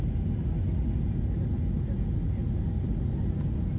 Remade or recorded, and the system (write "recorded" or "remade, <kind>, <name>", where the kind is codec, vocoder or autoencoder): recorded